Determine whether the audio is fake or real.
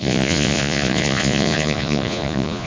fake